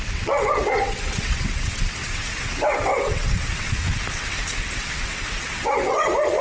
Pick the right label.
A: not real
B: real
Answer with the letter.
A